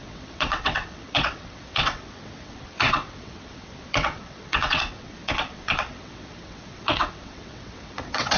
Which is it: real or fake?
fake